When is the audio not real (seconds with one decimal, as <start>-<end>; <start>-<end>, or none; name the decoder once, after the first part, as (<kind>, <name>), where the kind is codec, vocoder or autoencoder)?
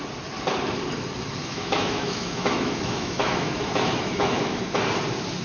1.4-4.6 (autoencoder, DAC-VAE)